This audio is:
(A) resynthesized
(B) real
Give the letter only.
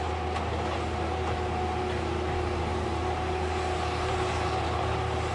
B